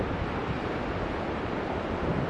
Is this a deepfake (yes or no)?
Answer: yes